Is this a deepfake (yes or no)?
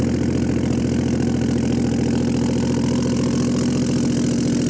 yes